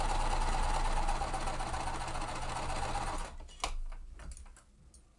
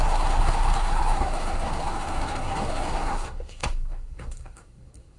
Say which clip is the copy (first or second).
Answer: second